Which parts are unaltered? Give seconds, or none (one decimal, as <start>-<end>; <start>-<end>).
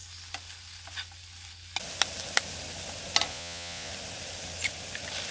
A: 0.0-3.3; 3.9-5.3